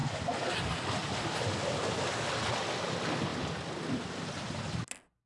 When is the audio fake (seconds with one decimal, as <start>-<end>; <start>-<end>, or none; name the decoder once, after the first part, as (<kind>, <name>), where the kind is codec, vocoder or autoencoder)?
none